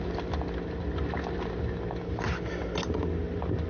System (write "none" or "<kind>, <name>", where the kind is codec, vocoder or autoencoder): none